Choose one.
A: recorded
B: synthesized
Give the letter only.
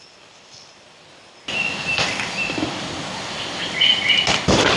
A